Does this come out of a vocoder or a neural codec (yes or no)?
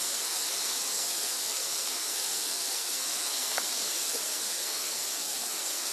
yes